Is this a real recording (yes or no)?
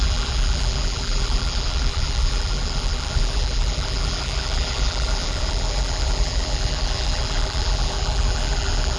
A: no